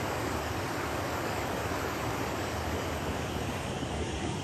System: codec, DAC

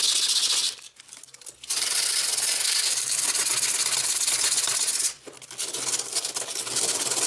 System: none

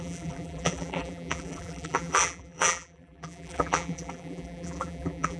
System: vocoder, BigVGAN v2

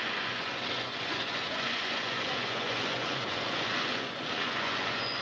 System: vocoder, Vocos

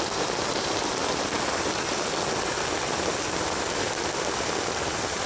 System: none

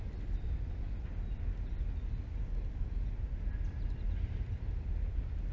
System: none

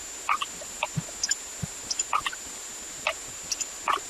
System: none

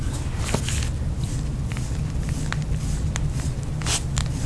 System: none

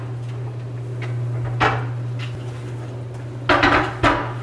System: none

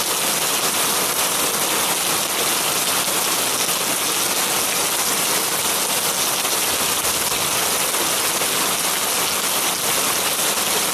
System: none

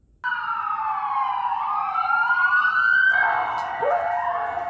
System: none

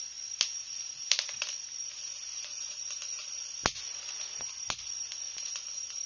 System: none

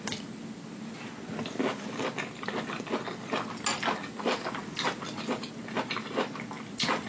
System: none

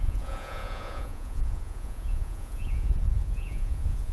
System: vocoder, Vocos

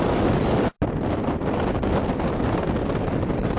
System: none